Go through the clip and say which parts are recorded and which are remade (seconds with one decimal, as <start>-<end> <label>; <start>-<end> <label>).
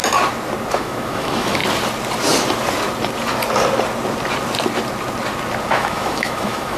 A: 0.0-0.7 recorded; 0.7-1.6 remade; 1.6-5.7 recorded; 5.7-6.8 remade